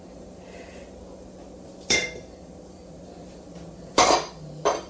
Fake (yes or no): no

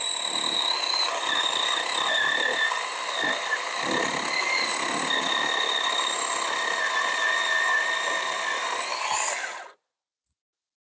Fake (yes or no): no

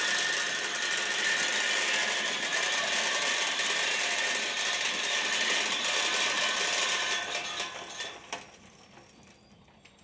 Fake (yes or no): no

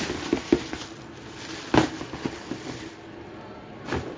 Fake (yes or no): no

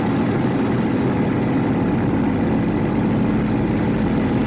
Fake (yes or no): no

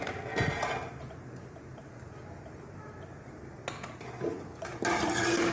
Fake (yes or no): no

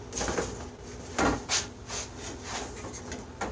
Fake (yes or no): no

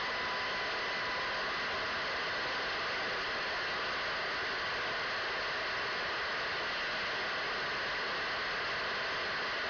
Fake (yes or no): no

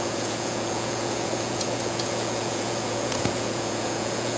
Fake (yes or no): yes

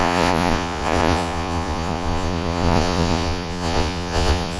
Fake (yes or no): yes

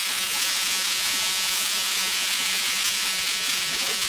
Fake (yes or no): yes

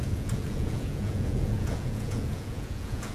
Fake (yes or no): yes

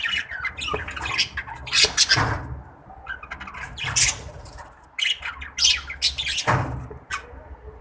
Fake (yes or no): no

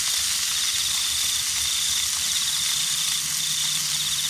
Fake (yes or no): no